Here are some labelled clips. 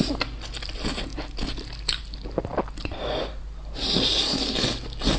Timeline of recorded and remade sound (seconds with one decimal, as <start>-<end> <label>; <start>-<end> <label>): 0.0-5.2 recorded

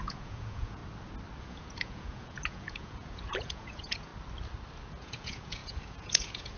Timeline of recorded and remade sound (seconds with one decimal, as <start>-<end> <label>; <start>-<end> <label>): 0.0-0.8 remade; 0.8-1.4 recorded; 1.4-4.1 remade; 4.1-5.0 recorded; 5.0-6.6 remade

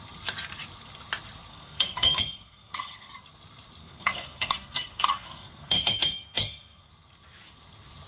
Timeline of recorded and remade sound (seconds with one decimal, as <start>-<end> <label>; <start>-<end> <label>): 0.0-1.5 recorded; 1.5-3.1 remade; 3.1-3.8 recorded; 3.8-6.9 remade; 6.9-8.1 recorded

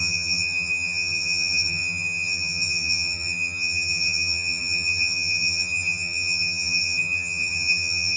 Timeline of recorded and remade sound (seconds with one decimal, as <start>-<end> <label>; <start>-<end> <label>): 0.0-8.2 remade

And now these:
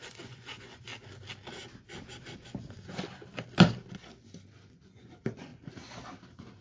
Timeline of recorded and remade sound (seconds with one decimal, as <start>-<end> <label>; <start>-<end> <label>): 0.0-0.9 remade; 0.9-4.5 recorded; 4.5-5.5 remade; 5.5-6.6 recorded